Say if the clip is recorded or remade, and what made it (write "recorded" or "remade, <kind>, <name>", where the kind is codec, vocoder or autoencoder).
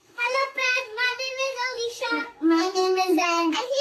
remade, codec, SNAC